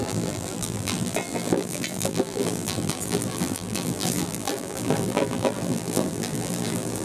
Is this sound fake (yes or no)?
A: yes